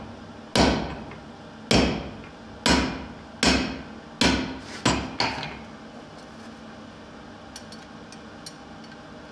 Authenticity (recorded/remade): recorded